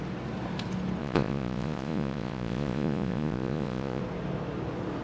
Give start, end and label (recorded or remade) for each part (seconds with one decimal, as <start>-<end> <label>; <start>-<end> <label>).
0.0-1.0 recorded; 1.0-4.0 remade; 4.0-5.0 recorded